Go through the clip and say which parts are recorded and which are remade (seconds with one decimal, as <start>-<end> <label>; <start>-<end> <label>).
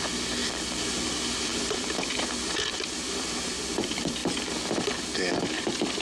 0.0-0.4 remade; 0.4-1.1 recorded; 1.1-4.2 remade; 4.2-5.6 recorded; 5.6-6.0 remade